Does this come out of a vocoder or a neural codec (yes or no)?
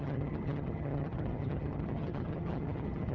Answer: yes